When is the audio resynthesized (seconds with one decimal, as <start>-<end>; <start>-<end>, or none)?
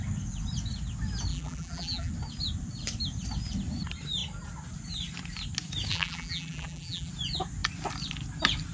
1.3-2.1; 5.9-7.1